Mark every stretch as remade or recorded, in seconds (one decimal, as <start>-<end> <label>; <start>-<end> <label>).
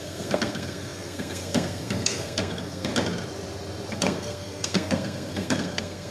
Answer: 0.0-2.9 remade; 2.9-3.9 recorded; 3.9-6.1 remade